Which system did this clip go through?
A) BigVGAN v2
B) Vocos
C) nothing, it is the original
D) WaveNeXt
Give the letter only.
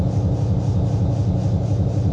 C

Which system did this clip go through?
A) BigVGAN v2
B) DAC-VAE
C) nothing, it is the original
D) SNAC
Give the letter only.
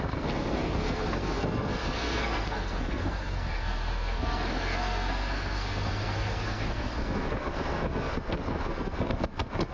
D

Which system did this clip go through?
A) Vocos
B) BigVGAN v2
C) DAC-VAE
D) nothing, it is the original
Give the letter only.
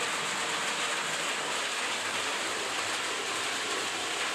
D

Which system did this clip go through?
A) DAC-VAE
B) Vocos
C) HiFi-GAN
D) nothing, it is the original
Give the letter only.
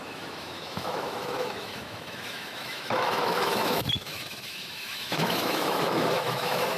A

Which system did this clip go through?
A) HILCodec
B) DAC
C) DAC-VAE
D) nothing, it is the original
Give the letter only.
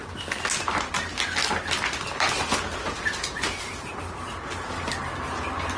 D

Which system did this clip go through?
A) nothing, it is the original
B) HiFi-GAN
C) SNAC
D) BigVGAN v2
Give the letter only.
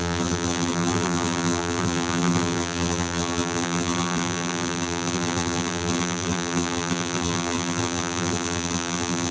D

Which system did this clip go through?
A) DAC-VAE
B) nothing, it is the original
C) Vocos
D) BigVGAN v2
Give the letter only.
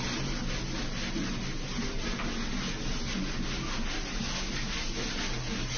B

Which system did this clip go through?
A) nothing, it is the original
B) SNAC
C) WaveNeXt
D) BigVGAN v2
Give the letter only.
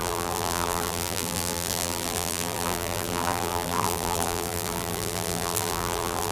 D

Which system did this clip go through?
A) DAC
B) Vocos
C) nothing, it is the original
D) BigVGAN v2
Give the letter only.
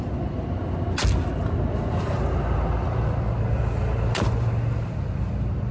C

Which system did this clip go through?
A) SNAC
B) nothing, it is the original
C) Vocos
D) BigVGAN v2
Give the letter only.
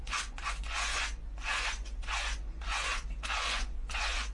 C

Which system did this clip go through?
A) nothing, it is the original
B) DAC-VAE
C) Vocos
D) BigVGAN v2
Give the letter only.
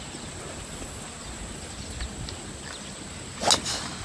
A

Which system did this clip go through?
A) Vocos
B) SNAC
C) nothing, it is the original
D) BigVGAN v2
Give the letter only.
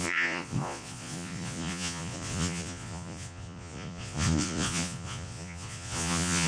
A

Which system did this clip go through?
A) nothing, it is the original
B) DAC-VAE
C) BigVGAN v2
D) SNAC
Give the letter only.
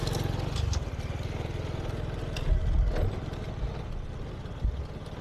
A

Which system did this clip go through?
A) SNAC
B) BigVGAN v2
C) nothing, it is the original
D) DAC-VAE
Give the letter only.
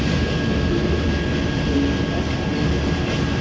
C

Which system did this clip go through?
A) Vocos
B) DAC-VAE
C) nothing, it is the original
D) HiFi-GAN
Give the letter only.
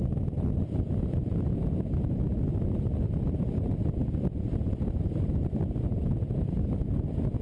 C